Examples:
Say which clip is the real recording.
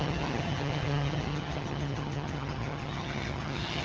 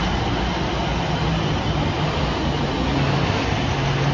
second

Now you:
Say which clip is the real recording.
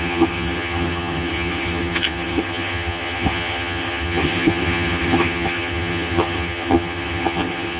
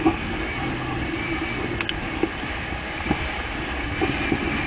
second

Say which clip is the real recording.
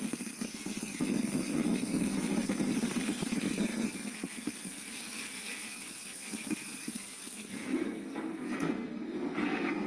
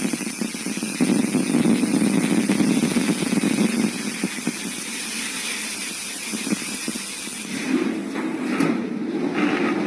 second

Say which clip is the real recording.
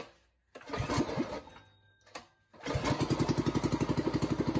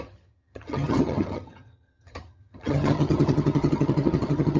first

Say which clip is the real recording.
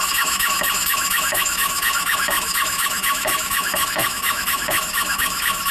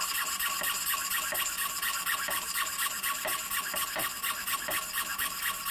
second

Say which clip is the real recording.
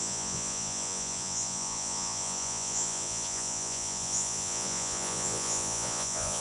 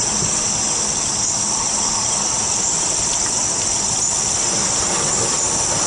second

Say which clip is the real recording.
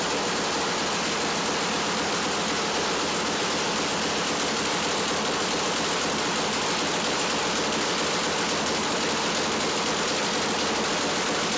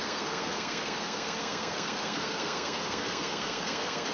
first